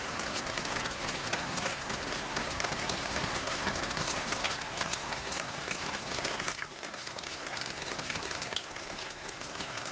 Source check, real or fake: fake